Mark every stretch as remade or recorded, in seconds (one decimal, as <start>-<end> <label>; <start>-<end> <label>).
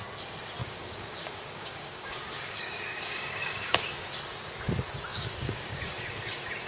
0.0-0.6 recorded; 0.6-3.8 remade; 3.8-5.1 recorded; 5.1-6.0 remade; 6.0-6.7 recorded